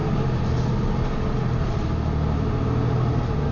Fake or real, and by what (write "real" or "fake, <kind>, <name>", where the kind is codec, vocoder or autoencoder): real